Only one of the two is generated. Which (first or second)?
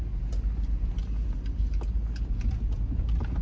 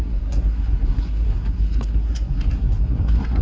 second